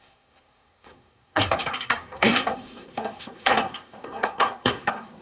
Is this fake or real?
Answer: fake